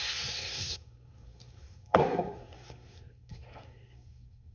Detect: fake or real fake